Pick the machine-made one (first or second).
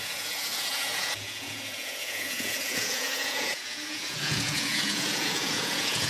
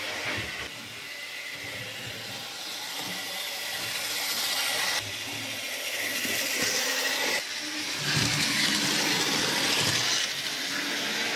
first